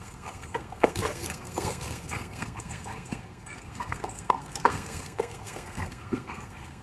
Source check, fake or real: fake